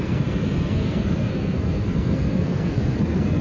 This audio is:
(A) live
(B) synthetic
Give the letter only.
B